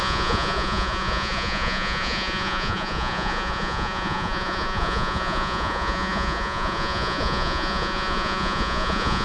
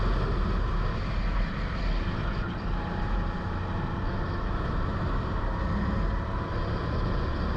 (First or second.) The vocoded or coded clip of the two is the first